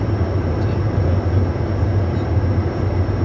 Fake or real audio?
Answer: real